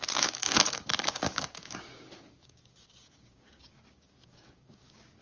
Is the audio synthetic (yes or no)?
yes